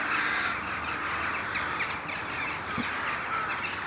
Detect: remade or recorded recorded